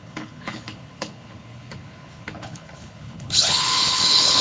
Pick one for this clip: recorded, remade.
remade